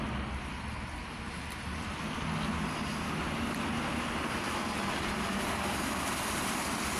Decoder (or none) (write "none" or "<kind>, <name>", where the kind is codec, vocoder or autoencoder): none